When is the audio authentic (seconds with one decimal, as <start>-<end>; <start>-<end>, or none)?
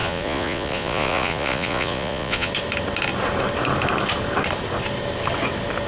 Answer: 2.5-5.9